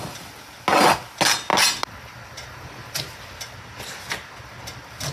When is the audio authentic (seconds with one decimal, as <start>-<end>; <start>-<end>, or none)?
0.0-5.1